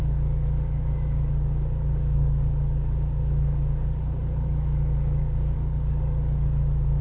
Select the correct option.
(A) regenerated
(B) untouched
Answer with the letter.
A